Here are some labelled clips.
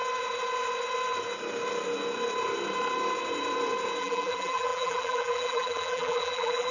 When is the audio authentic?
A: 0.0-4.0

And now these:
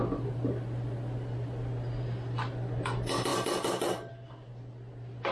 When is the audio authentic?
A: 0.0-5.3

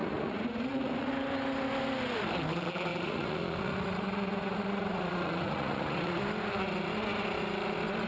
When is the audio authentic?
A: 1.1-2.9; 6.2-8.1